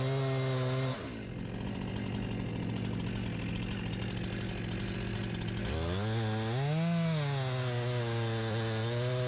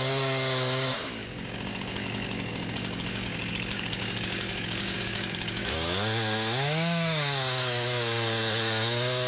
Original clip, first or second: first